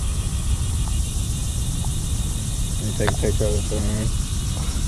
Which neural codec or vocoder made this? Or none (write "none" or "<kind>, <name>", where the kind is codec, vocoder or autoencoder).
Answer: vocoder, BigVGAN v2